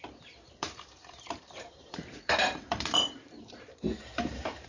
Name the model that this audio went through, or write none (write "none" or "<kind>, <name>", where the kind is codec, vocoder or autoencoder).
vocoder, BigVGAN v2